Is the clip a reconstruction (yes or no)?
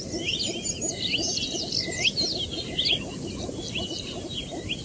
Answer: no